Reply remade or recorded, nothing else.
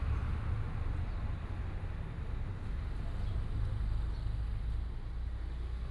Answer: recorded